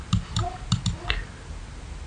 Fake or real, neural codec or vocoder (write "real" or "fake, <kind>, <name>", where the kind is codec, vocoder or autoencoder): real